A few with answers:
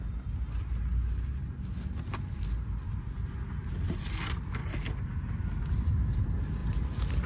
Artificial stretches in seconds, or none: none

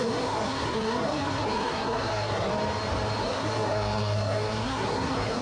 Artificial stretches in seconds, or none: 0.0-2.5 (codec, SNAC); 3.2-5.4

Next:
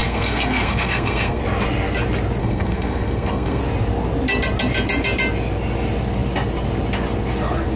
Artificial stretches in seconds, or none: 0.0-1.4 (codec, SNAC); 2.4-3.6

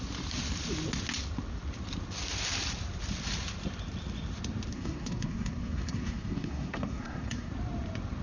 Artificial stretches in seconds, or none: 4.7-7.5 (codec, SNAC)

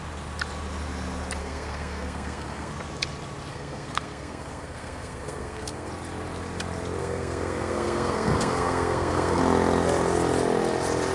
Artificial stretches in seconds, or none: 1.4-2.7 (codec, SNAC); 3.5-5.9; 7.0-9.4